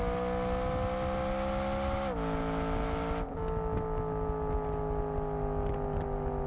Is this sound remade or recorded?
recorded